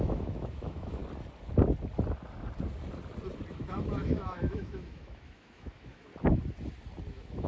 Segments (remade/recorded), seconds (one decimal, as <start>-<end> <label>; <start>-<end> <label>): 0.0-1.0 remade; 1.0-3.5 recorded; 3.5-6.1 remade; 6.1-7.1 recorded; 7.1-7.5 remade